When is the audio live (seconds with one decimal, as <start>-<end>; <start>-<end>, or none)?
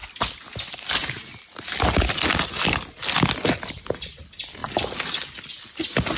0.0-6.2